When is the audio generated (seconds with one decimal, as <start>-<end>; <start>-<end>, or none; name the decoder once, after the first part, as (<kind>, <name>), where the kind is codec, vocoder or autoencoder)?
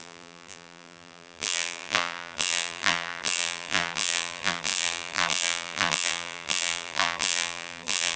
0.0-8.2 (vocoder, BigVGAN v2)